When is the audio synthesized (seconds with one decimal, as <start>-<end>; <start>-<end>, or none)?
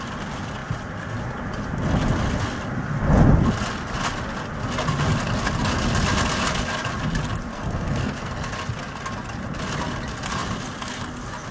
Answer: 7.5-8.5